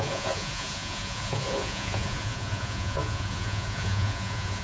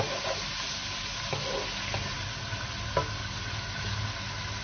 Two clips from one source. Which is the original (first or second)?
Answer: second